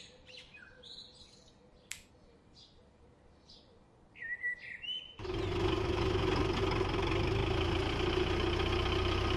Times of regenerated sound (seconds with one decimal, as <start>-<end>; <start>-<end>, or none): none

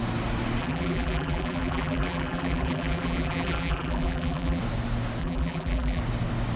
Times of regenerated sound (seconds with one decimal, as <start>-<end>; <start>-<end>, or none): 0.6-4.6; 5.2-6.0

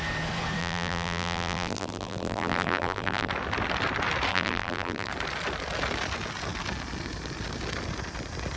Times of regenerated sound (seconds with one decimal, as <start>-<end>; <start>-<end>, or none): 0.6-3.3; 4.3-5.1